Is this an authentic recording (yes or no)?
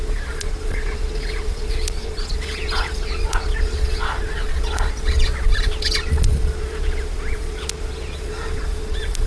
no